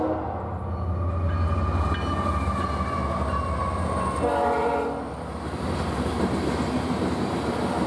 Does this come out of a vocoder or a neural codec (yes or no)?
no